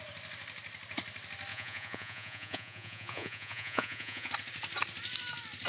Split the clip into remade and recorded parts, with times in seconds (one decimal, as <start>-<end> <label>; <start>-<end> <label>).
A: 0.0-1.5 recorded; 1.5-4.3 remade; 4.3-5.7 recorded